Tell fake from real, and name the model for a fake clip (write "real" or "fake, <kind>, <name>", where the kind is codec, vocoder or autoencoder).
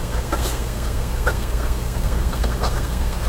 fake, codec, SNAC